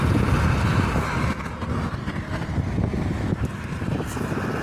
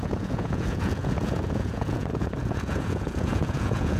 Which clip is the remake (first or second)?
second